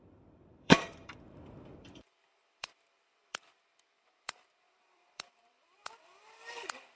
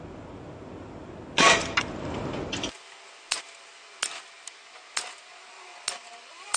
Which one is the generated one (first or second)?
first